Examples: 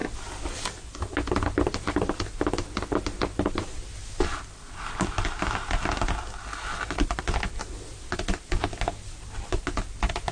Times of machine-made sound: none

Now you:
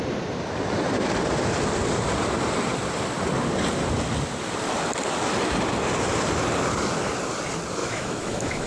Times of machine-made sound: 7.8-8.7

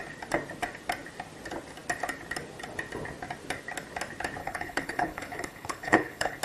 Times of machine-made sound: 4.4-6.4